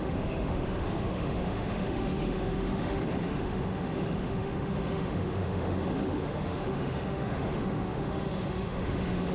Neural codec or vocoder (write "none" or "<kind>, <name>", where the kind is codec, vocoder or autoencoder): autoencoder, DAC-VAE